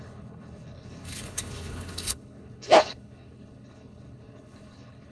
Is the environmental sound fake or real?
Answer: fake